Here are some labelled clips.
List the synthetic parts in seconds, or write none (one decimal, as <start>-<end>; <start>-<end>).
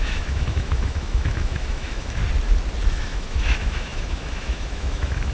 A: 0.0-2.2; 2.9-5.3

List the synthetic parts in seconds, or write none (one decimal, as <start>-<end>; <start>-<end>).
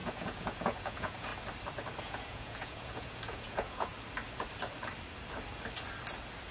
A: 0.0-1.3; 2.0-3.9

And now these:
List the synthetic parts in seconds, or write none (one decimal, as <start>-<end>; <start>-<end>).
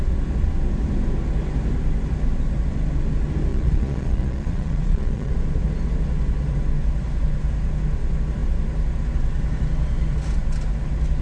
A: 3.5-5.3